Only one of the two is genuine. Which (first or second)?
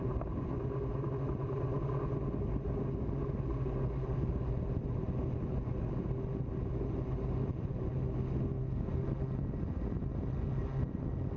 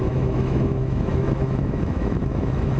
first